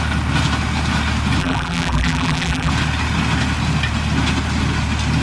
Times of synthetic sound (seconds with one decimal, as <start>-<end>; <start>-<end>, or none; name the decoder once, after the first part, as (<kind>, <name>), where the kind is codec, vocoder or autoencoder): 1.4-2.7 (vocoder, BigVGAN v2)